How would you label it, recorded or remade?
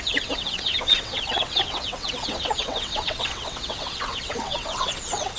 remade